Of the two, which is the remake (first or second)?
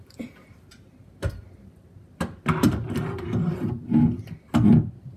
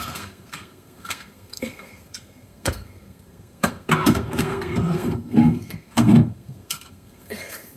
second